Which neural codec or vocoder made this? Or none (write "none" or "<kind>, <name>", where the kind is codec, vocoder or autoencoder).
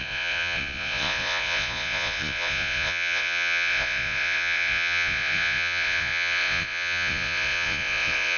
vocoder, Vocos